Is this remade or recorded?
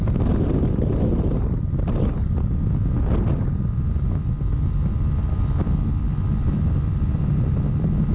recorded